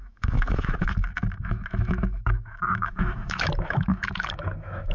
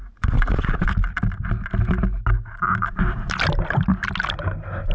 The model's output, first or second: first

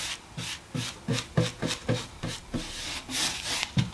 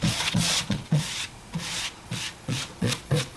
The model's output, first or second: second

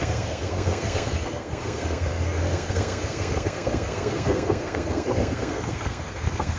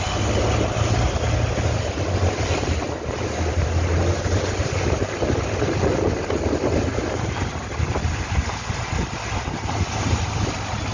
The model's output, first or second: first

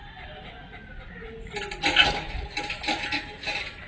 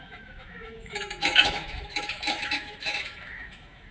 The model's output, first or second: second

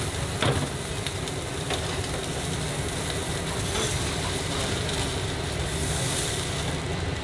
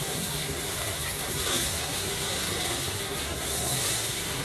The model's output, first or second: second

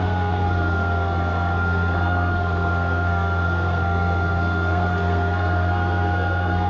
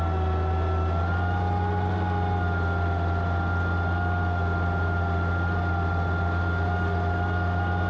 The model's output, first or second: first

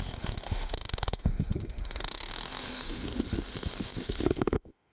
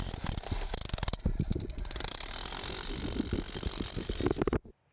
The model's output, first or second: first